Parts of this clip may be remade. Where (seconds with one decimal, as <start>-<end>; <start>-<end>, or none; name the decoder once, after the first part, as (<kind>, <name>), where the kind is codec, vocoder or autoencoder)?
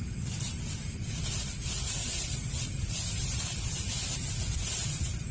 none